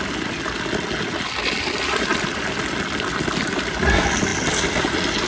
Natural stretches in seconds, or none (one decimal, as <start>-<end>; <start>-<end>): 0.0-5.3